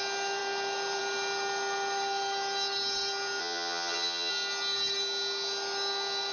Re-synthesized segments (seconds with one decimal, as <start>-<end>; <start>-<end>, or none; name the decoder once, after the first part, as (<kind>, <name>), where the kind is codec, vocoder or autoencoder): 3.4-4.3 (vocoder, HiFi-GAN)

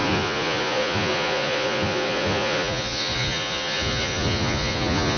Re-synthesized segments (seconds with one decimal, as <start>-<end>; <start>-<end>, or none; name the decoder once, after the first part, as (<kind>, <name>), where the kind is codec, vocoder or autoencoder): 0.0-5.2 (vocoder, Vocos)

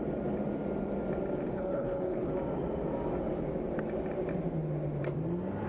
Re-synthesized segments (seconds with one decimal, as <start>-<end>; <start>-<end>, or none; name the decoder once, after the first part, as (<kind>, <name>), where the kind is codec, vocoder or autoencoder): 1.5-2.3 (codec, HILCodec)

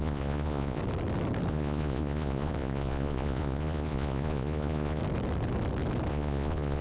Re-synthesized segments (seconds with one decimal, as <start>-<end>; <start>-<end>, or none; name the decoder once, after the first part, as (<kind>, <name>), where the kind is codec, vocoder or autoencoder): 0.0-0.8 (vocoder, Vocos); 1.5-5.0; 6.1-6.8